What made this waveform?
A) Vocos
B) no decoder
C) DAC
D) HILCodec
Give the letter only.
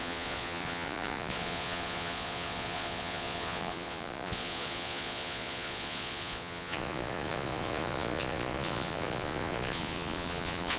A